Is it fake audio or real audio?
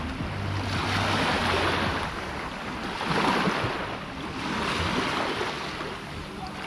real